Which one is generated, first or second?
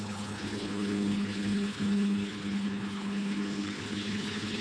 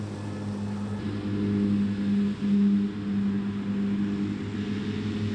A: first